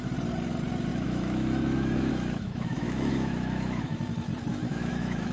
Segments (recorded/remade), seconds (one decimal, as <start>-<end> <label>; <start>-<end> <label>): 0.0-0.9 recorded; 0.9-4.1 remade; 4.1-4.5 recorded; 4.5-5.3 remade